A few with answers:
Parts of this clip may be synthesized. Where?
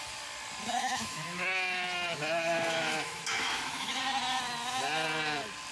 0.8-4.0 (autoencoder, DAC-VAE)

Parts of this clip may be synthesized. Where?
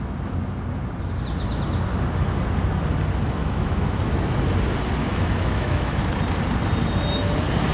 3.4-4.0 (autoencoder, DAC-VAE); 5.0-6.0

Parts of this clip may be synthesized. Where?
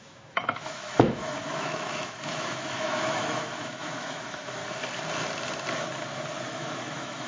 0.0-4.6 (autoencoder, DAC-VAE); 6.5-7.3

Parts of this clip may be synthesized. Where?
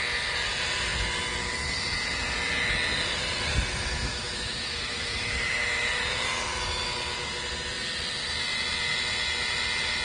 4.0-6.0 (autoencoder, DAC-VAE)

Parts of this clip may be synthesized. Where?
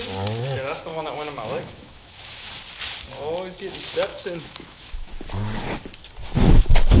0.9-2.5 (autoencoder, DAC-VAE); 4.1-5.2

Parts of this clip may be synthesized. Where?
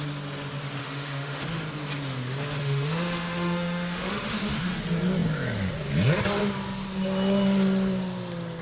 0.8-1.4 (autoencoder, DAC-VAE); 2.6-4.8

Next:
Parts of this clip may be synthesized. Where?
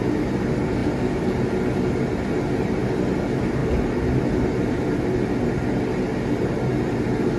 none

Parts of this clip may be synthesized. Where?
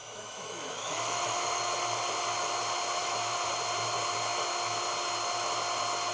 0.0-1.6 (autoencoder, DAC-VAE); 3.0-3.5